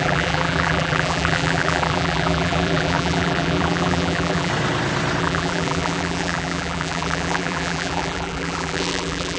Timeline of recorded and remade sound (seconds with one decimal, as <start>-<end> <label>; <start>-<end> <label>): 0.0-4.5 remade; 4.5-5.2 recorded; 5.2-9.4 remade